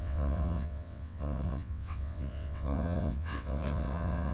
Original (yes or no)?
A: no